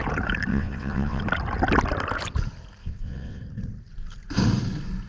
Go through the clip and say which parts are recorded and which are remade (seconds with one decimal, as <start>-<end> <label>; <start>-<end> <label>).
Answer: 0.0-0.5 recorded; 0.5-1.2 remade; 1.2-2.8 recorded; 2.8-3.4 remade; 3.4-5.1 recorded